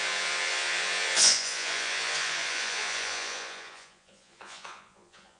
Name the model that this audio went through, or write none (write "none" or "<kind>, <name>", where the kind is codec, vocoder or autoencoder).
vocoder, Vocos